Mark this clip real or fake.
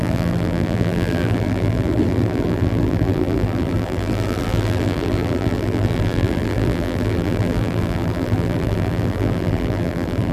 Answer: fake